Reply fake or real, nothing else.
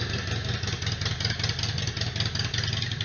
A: real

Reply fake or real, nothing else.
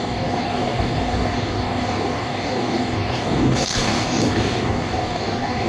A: fake